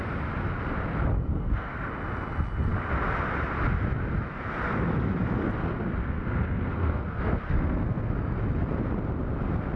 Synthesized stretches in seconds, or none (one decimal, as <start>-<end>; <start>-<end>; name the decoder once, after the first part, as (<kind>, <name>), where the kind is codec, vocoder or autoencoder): 1.3-1.9 (codec, SNAC); 6.0-8.1